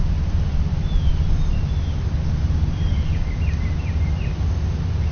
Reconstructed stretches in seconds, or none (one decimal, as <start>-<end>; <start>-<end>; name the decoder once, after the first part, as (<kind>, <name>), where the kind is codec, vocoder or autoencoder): none